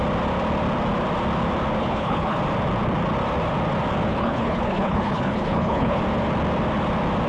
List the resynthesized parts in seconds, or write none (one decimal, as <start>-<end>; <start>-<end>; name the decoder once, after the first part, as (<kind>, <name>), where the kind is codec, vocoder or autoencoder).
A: 1.8-2.4 (codec, HILCodec); 4.1-6.0